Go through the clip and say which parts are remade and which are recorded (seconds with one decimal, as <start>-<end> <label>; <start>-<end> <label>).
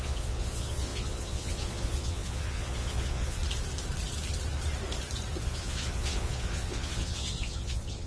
0.0-3.4 remade; 3.4-5.4 recorded; 5.4-8.1 remade